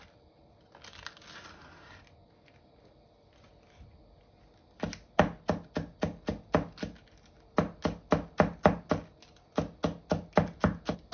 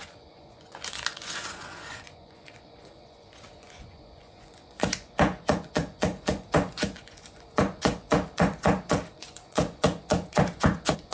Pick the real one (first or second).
first